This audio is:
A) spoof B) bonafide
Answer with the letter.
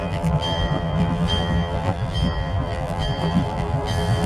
A